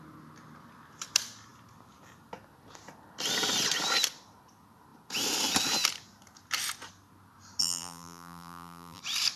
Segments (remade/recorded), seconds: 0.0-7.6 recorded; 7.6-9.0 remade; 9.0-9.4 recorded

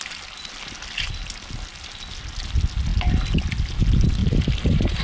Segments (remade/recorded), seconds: 0.0-4.2 recorded; 4.2-5.0 remade

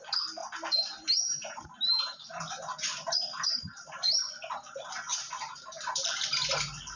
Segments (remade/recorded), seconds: 0.0-0.4 recorded; 0.4-4.3 remade; 4.3-5.1 recorded; 5.1-6.5 remade; 6.5-7.0 recorded

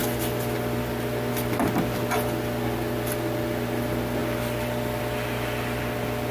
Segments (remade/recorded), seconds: 0.0-1.3 remade; 1.3-4.2 recorded; 4.2-5.0 remade; 5.0-6.3 recorded

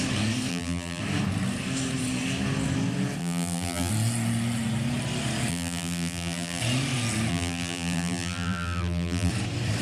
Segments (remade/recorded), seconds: 0.0-0.5 recorded; 0.5-1.0 remade; 1.0-3.2 recorded; 3.2-3.9 remade; 3.9-5.5 recorded; 5.5-6.6 remade; 6.6-7.3 recorded; 7.3-9.3 remade; 9.3-9.8 recorded

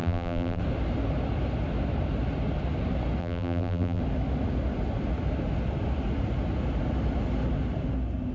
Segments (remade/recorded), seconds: 0.0-0.6 remade; 0.6-3.2 recorded; 3.2-4.0 remade; 4.0-8.3 recorded

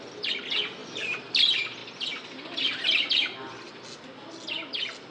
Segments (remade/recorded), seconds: 0.0-0.8 recorded; 0.8-1.4 remade; 1.4-5.1 recorded

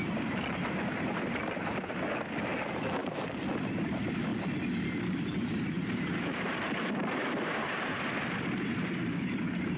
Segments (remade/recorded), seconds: 0.0-1.7 remade; 1.7-3.7 recorded; 3.7-4.3 remade; 4.3-5.1 recorded; 5.1-9.8 remade